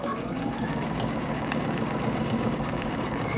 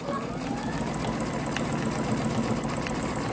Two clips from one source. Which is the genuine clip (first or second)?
second